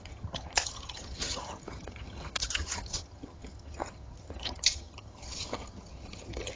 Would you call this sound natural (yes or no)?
no